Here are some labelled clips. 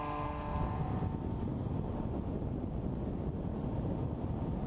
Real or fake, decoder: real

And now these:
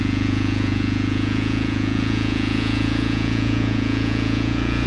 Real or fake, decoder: fake, vocoder, Vocos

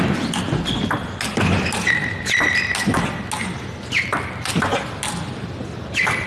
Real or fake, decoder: real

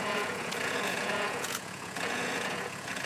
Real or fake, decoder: fake, vocoder, Vocos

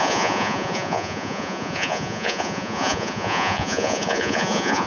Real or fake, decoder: fake, vocoder, Vocos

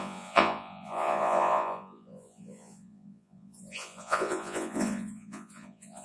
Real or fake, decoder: fake, vocoder, Vocos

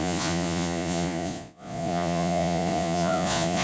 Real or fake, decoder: fake, vocoder, Vocos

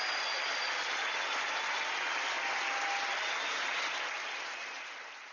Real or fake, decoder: real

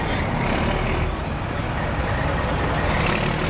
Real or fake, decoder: real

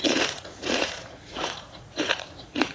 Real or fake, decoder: fake, vocoder, Vocos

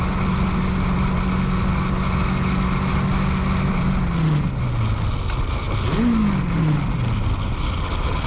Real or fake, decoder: real